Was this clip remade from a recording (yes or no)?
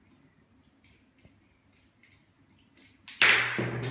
no